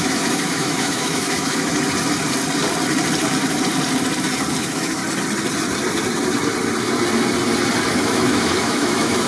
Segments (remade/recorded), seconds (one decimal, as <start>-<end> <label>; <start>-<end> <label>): 0.0-1.7 remade; 1.7-4.6 recorded; 4.6-5.0 remade; 5.0-7.9 recorded; 7.9-9.3 remade